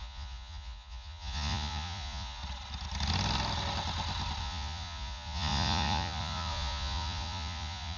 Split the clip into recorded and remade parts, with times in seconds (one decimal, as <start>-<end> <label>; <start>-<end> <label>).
0.0-2.4 remade; 2.4-4.4 recorded; 4.4-8.0 remade